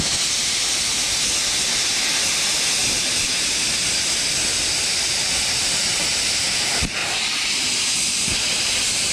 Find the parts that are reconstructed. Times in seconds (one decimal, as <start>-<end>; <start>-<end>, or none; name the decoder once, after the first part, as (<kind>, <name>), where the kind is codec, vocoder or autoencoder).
2.8-3.5 (vocoder, BigVGAN v2); 7.0-8.0